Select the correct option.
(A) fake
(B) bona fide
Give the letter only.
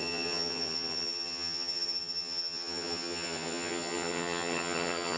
A